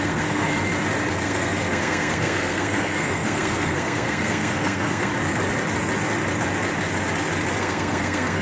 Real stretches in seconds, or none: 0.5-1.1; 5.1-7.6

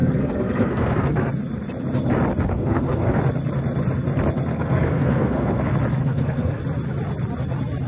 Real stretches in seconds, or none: 1.3-2.5; 3.2-4.5; 5.6-6.0; 6.6-7.9